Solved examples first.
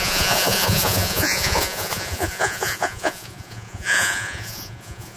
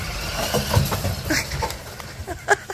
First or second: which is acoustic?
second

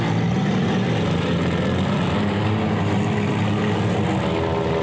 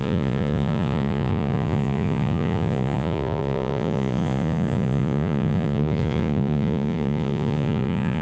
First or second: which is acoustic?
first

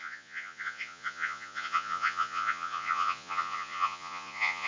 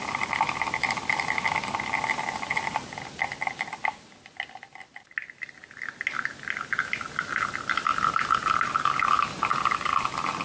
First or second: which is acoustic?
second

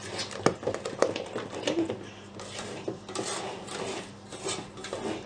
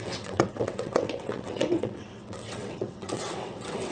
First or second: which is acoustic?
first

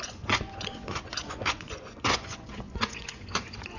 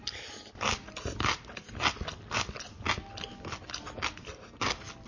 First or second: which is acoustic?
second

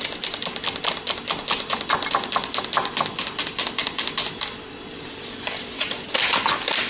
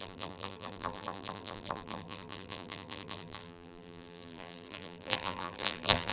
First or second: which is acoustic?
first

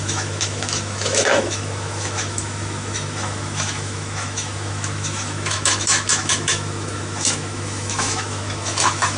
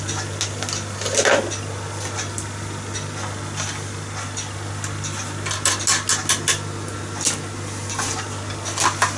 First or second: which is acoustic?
second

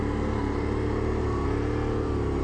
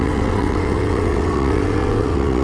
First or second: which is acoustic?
first